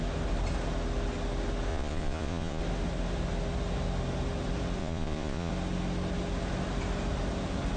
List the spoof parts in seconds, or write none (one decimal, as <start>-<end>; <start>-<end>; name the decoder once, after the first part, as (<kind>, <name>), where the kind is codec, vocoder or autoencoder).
1.7-2.6 (vocoder, Vocos); 4.8-5.5